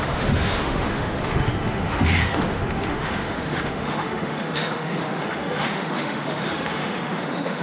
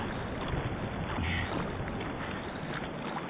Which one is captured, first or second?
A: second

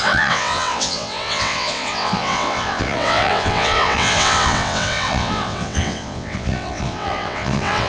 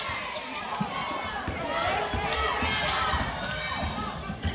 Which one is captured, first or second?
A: second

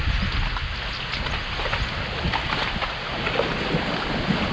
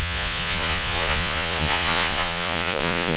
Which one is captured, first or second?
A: first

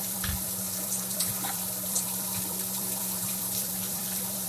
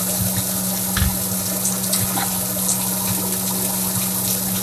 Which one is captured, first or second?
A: second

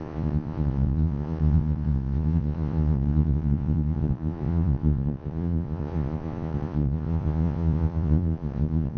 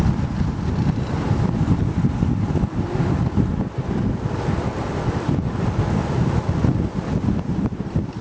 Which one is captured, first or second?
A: second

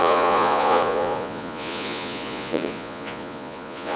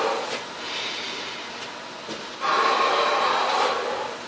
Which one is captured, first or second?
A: second